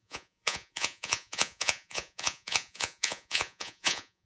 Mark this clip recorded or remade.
remade